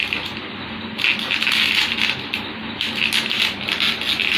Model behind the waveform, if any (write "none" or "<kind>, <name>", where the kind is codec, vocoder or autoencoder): none